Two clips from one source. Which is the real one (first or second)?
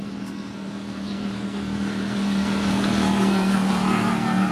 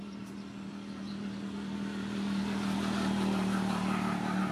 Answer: second